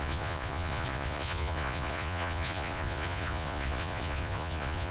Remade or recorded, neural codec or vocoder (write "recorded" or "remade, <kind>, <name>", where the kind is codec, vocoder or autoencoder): remade, vocoder, Vocos